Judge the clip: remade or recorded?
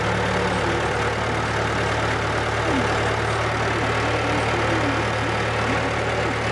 recorded